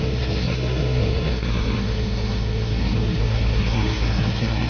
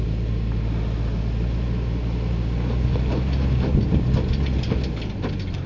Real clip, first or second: second